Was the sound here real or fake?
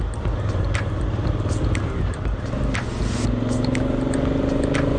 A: real